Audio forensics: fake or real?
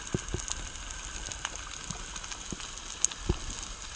real